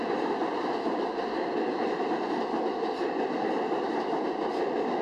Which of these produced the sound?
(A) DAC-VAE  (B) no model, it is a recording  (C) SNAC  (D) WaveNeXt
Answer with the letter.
B